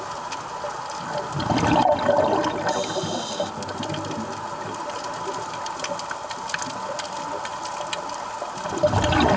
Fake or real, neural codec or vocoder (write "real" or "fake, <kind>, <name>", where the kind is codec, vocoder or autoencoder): real